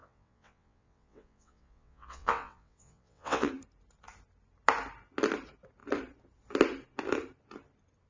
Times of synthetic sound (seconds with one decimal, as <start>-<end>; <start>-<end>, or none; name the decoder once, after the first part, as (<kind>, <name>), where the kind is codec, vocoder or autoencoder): 0.0-3.5 (vocoder, WaveNeXt)